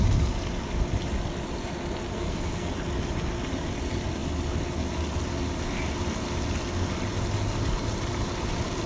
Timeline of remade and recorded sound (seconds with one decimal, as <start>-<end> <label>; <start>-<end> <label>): 0.0-2.1 recorded; 2.1-2.7 remade; 2.7-8.9 recorded